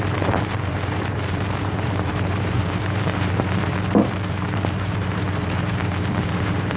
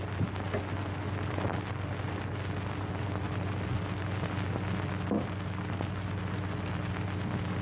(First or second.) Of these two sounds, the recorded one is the second